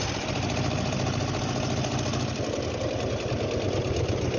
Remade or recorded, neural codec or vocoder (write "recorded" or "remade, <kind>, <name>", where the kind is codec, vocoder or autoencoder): recorded